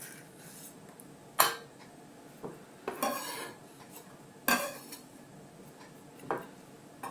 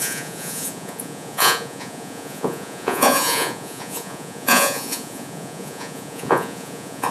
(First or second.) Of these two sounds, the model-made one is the second